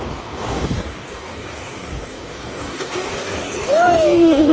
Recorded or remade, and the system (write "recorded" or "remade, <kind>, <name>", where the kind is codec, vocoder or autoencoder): remade, codec, DAC